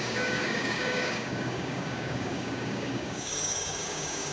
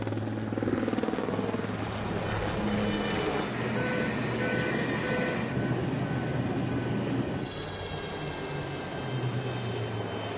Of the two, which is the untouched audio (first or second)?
second